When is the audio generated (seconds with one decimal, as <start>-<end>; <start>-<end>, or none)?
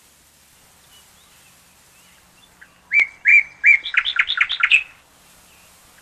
none